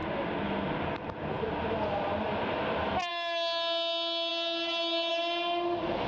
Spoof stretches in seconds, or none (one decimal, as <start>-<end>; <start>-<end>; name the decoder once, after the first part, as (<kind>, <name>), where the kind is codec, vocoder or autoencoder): none